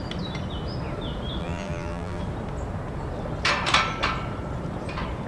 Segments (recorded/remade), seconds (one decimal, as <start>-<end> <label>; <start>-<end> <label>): 0.0-1.4 recorded; 1.4-2.2 remade; 2.2-5.3 recorded